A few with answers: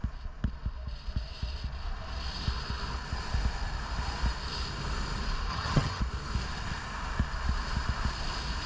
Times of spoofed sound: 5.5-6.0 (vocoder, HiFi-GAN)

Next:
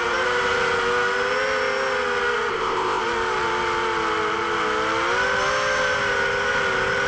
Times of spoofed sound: 2.5-3.0 (codec, ZipCodec)

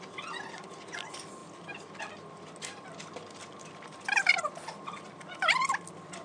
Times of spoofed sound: none

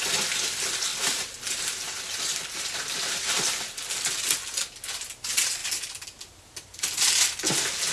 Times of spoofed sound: 0.9-3.8 (vocoder, BigVGAN v2)